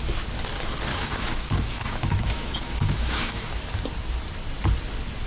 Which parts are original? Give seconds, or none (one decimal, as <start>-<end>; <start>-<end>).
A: 0.0-0.9; 3.8-5.3